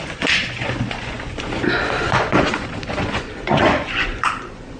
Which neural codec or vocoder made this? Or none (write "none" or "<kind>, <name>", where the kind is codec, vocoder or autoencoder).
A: vocoder, Vocos